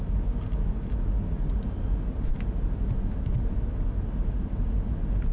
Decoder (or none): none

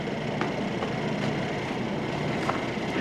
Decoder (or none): none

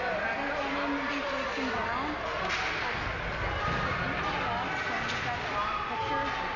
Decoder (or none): none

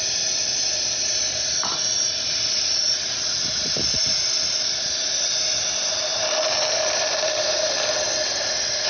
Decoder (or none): vocoder, BigVGAN v2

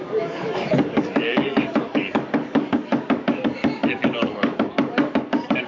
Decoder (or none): codec, DAC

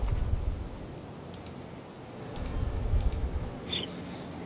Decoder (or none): none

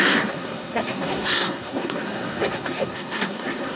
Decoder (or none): codec, SNAC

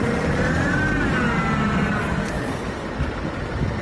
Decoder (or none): none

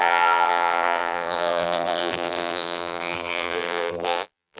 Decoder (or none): vocoder, BigVGAN v2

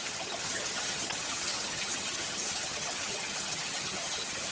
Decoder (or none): vocoder, HiFi-GAN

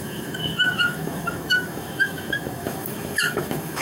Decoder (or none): autoencoder, DAC-VAE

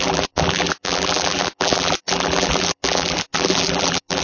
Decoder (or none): vocoder, BigVGAN v2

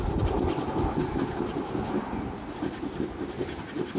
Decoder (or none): none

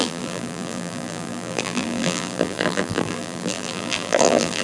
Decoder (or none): vocoder, BigVGAN v2